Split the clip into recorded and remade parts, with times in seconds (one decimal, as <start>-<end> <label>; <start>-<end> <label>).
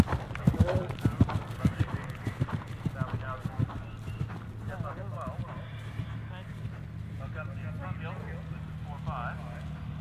0.0-10.0 recorded